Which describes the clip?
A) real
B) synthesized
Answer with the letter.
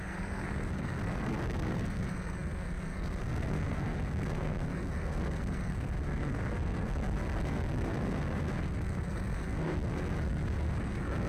B